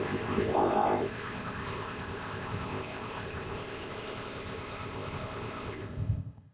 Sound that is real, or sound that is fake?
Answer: fake